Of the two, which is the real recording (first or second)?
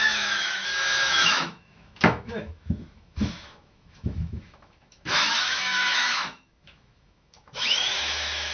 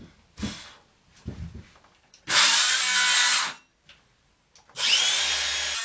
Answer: second